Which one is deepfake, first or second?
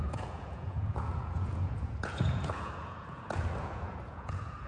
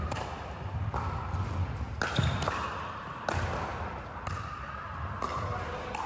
first